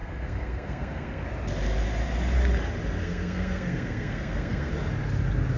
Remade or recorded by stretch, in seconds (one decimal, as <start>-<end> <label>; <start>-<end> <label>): 0.0-1.2 remade; 1.2-3.0 recorded; 3.0-4.7 remade; 4.7-5.6 recorded

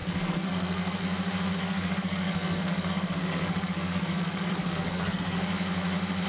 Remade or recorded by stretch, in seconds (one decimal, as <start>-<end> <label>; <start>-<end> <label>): 0.0-1.0 remade; 1.0-1.6 recorded; 1.6-5.4 remade; 5.4-6.3 recorded

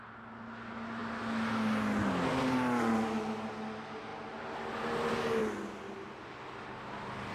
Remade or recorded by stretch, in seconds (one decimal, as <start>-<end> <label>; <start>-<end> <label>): 0.0-7.3 recorded